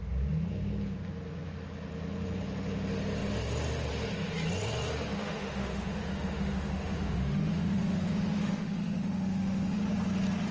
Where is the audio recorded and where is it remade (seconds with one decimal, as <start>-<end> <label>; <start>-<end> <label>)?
0.0-5.2 recorded; 5.2-9.8 remade; 9.8-10.5 recorded